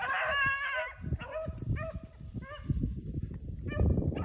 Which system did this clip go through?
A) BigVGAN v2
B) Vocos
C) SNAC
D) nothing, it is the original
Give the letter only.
D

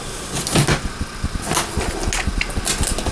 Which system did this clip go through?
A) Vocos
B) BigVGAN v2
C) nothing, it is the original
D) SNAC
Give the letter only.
C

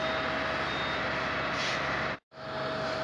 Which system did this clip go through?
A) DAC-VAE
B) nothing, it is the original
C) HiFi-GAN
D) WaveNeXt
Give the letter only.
B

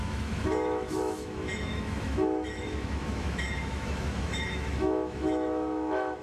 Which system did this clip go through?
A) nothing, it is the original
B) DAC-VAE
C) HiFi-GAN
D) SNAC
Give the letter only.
B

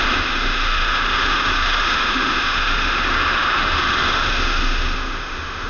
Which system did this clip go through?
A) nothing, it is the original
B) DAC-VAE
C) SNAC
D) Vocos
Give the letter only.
B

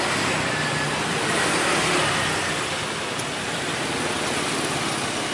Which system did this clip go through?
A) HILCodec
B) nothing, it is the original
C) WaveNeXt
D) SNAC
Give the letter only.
B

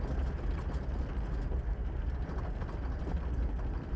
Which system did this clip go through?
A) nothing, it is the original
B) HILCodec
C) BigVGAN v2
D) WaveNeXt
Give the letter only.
A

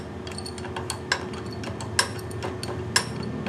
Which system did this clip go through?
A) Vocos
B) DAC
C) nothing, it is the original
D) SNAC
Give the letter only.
C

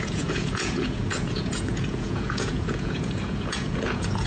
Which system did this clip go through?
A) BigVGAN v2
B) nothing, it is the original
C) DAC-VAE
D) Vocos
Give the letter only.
D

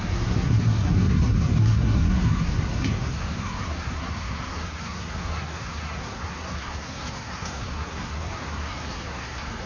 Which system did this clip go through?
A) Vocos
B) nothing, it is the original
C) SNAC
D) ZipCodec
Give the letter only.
C